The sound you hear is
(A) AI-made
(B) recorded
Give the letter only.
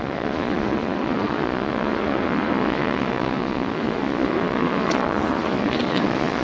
A